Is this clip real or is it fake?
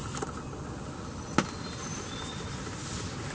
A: real